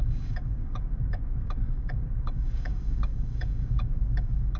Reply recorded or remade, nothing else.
remade